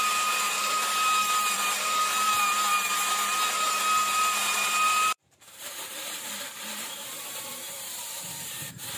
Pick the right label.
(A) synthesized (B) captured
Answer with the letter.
A